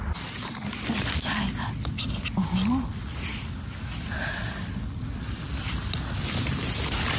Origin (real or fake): real